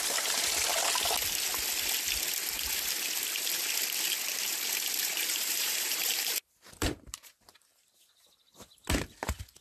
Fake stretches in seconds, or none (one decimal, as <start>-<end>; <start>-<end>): 5.0-7.3